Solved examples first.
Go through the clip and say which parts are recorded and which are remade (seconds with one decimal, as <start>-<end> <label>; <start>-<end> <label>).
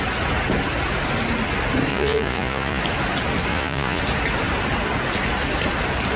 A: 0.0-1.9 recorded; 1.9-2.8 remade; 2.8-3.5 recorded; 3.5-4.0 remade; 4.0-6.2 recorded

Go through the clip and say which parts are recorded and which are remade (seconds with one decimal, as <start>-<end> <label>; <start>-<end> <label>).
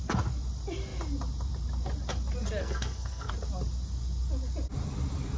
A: 0.0-2.6 recorded; 2.6-3.3 remade; 3.3-5.4 recorded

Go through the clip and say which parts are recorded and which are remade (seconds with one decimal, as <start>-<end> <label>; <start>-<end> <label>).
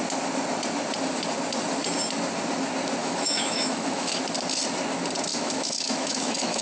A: 0.0-3.0 recorded; 3.0-4.2 remade; 4.2-5.3 recorded; 5.3-6.6 remade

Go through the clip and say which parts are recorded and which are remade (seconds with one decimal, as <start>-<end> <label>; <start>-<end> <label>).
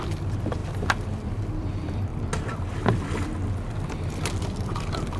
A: 0.0-2.1 remade; 2.1-3.8 recorded; 3.8-5.2 remade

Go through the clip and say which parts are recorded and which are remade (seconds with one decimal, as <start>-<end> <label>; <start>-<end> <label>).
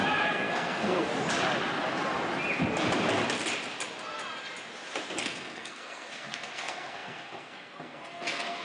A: 0.0-1.1 remade; 1.1-5.2 recorded; 5.2-8.6 remade